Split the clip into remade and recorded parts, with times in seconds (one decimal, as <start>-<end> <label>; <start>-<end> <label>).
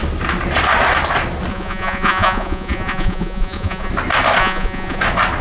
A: 0.0-1.5 recorded; 1.5-3.9 remade; 3.9-4.4 recorded; 4.4-5.0 remade; 5.0-5.4 recorded